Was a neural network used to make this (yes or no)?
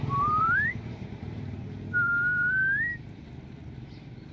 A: yes